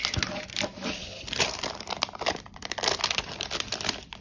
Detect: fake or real fake